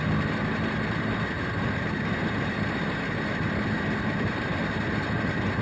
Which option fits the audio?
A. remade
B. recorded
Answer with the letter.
B